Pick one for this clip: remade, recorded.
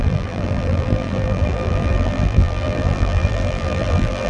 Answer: remade